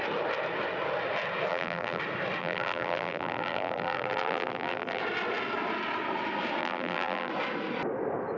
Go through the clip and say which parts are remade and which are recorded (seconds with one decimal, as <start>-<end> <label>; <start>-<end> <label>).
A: 0.0-1.5 recorded; 1.5-2.0 remade; 2.0-2.4 recorded; 2.4-5.0 remade; 5.0-6.6 recorded; 6.6-7.3 remade; 7.3-8.4 recorded